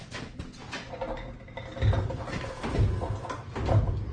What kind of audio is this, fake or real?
real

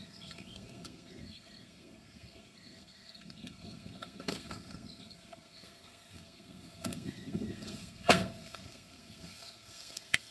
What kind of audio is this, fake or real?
fake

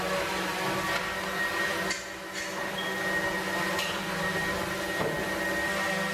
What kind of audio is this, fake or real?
real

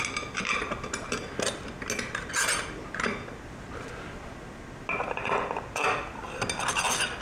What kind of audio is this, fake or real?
real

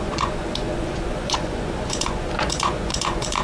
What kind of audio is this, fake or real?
fake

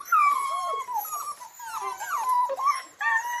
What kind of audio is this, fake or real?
real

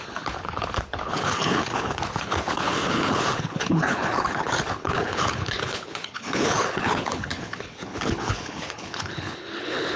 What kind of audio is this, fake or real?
fake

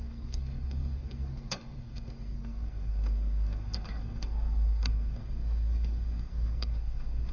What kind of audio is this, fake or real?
fake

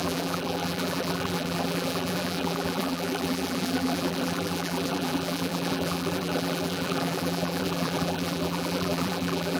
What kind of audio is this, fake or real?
fake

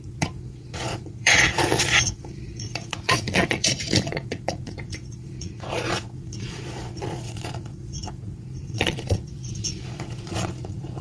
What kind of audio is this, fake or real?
fake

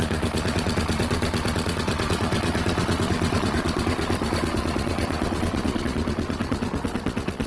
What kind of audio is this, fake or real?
fake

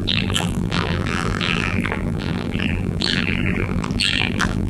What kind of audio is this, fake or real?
fake